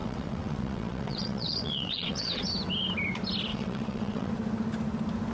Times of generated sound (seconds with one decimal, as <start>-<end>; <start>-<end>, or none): 0.0-2.5; 3.5-4.3